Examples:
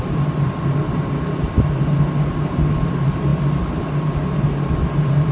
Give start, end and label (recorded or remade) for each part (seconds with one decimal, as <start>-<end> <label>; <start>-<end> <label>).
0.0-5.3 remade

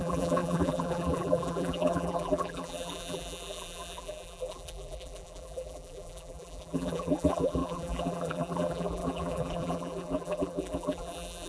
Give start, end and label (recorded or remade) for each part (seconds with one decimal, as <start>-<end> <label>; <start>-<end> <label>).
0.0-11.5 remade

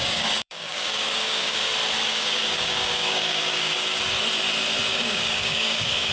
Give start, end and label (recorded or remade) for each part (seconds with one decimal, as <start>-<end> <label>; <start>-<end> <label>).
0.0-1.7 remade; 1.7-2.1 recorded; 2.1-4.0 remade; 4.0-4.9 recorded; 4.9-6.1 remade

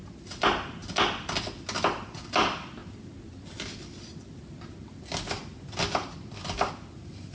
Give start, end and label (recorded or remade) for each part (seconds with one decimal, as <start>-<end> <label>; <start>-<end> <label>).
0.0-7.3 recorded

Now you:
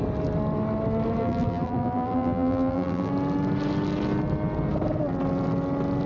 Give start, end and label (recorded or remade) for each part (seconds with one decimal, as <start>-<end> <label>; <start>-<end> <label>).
0.0-1.2 recorded; 1.2-3.1 remade; 3.1-6.1 recorded